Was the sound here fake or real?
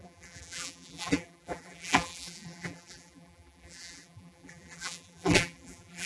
fake